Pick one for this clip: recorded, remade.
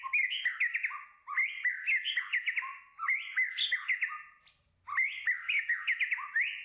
recorded